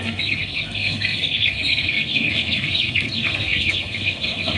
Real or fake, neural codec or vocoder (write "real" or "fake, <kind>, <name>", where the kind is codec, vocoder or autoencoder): fake, codec, SNAC